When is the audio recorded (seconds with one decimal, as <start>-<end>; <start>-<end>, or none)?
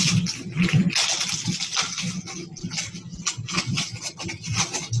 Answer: 0.0-5.0